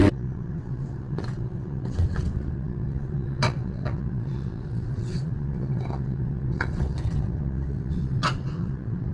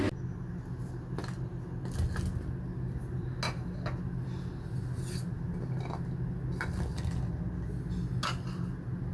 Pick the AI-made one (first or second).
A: first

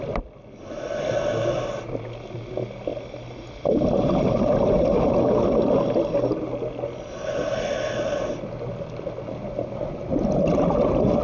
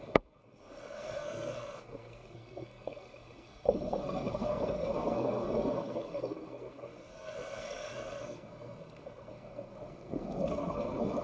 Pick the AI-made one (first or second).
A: second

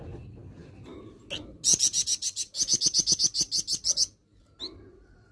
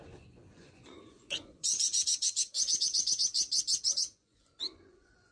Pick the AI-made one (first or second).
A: second